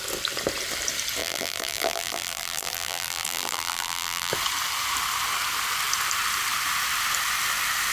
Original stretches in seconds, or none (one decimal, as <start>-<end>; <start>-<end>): 0.0-1.2; 4.3-7.9